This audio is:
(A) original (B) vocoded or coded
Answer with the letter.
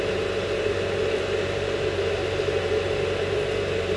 A